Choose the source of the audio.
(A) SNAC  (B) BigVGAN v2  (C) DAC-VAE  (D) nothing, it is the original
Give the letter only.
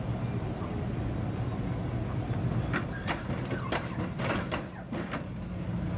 D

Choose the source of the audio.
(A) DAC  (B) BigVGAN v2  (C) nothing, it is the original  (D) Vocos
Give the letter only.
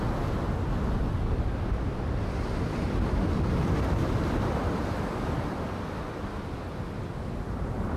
C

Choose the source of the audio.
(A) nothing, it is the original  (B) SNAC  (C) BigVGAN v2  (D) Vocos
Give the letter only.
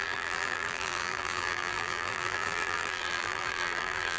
C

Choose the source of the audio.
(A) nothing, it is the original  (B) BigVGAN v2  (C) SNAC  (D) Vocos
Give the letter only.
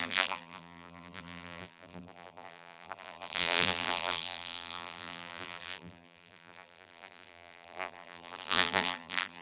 B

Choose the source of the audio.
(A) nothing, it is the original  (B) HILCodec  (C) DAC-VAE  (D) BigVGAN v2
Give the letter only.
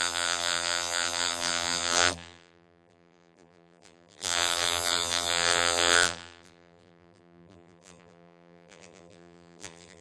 D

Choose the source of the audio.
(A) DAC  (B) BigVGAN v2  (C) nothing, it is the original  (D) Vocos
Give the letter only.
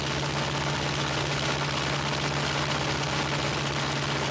C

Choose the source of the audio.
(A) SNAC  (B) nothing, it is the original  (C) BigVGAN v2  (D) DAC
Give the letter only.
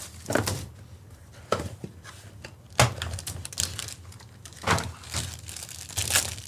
B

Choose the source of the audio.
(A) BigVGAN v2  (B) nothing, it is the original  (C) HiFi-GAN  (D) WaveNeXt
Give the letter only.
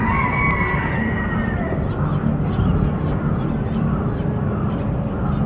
B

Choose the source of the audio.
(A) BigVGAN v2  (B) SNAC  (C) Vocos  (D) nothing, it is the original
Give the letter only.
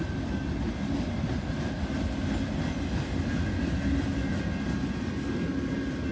D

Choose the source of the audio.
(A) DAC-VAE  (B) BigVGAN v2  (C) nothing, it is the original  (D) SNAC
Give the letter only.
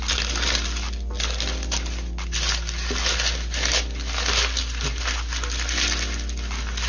C